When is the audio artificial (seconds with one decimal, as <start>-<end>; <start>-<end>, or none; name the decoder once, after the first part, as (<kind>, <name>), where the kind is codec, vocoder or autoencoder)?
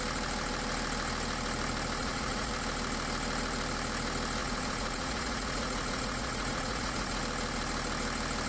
2.0-2.5 (vocoder, Vocos); 4.4-7.2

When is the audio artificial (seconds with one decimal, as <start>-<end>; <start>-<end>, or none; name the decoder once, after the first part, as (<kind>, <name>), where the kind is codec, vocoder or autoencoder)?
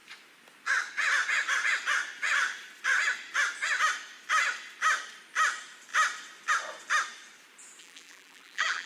7.8-8.9 (vocoder, BigVGAN v2)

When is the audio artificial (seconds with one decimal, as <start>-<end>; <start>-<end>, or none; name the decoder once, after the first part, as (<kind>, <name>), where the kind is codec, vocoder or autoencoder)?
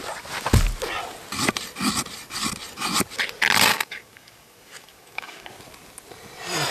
3.7-5.5 (codec, DAC)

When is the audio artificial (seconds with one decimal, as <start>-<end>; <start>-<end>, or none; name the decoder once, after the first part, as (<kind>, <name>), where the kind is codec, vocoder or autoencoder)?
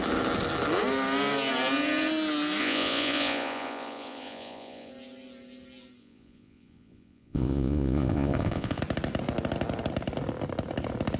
2.6-4.9 (vocoder, Vocos); 6.0-8.8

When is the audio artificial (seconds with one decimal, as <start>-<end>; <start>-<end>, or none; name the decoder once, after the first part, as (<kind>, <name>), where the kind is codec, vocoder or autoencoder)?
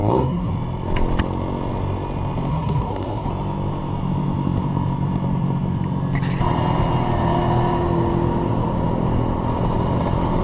0.0-0.5 (codec, SNAC); 2.5-3.3